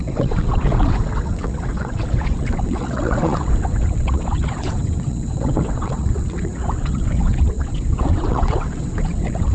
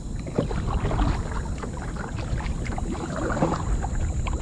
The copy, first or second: first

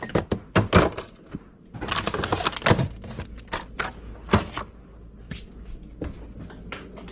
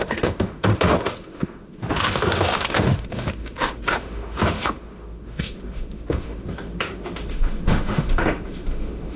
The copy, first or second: second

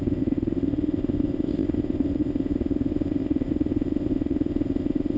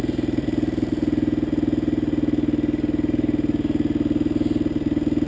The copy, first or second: first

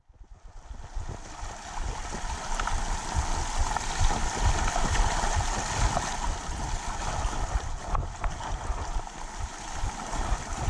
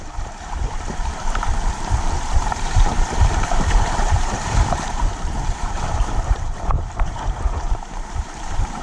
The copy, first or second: second